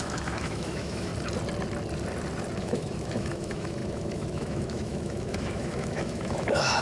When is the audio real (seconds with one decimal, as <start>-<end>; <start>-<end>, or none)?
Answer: 1.1-2.6